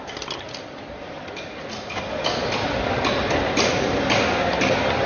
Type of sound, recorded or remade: recorded